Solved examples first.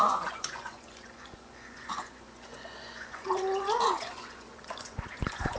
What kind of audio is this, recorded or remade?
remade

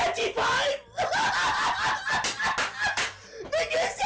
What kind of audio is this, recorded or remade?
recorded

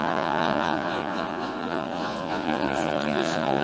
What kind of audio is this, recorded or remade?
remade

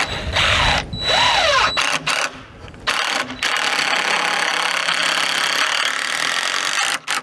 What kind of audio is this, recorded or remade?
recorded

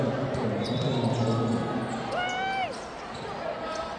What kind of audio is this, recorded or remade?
recorded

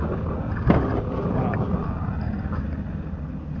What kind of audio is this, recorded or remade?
recorded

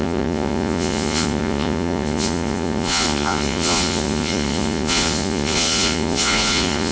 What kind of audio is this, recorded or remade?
remade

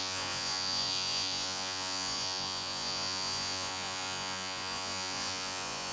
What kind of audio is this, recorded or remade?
remade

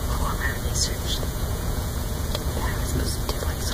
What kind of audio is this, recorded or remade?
remade